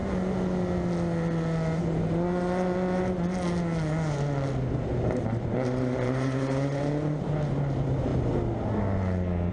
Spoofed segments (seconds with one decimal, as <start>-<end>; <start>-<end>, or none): 4.9-8.1